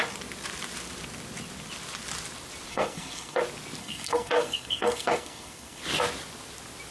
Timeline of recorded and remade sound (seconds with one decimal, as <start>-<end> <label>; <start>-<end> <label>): 0.0-2.7 recorded; 2.7-3.4 remade; 3.4-3.8 recorded; 3.8-5.8 remade; 5.8-6.9 recorded